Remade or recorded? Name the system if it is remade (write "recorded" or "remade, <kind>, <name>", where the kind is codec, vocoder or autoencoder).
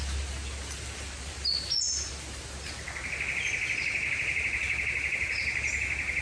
recorded